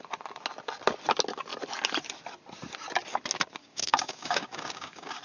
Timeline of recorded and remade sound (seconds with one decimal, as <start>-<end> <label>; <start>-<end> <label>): 0.0-3.6 recorded; 3.6-5.2 remade